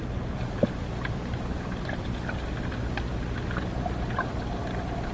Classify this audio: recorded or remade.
recorded